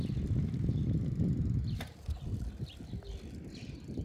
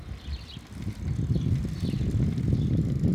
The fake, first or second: first